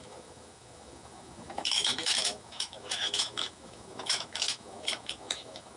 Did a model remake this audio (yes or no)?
yes